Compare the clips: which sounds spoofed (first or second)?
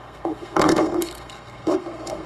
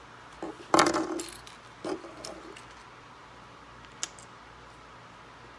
first